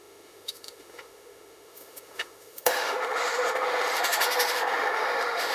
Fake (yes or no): yes